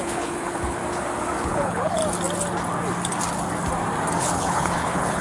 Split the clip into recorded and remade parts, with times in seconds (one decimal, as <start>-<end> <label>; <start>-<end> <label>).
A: 0.0-0.8 remade; 0.8-1.4 recorded; 1.4-2.0 remade; 2.0-4.2 recorded; 4.2-5.2 remade